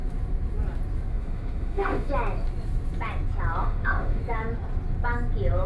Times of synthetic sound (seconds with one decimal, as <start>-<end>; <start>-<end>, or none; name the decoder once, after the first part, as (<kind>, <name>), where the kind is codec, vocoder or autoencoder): 1.1-2.1 (autoencoder, DAC-VAE); 3.6-4.2